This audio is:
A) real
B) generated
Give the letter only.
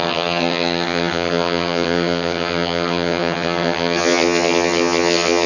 B